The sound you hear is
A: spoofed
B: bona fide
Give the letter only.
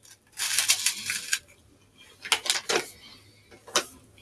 B